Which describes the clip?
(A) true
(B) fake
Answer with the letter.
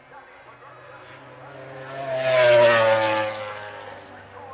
A